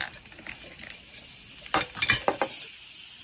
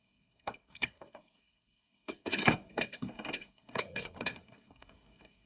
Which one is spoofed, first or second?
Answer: second